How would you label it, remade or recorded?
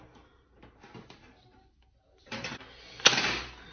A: recorded